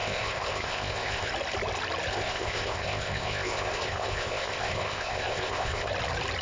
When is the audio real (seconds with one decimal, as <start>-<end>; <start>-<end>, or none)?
1.3-2.1; 5.9-6.4